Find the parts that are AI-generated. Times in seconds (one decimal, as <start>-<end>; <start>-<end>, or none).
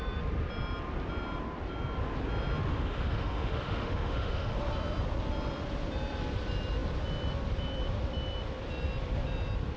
2.7-4.6